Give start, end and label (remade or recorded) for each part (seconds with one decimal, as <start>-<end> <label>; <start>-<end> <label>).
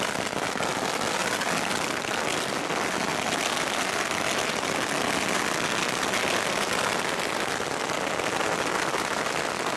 0.0-9.8 recorded